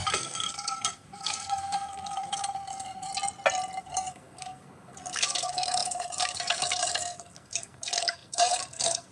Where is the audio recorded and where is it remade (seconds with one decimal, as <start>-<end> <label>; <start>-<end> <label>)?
0.0-3.1 remade; 3.1-3.8 recorded; 3.8-9.1 remade